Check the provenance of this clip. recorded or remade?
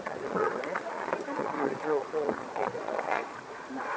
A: remade